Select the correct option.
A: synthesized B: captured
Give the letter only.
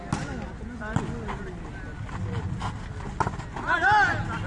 B